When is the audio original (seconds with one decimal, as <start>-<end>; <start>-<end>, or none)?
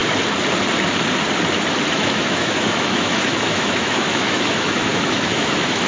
0.0-1.9